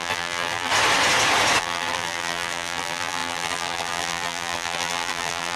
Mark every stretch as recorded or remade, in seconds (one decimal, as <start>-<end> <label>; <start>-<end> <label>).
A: 0.0-0.7 remade; 0.7-1.6 recorded; 1.6-5.6 remade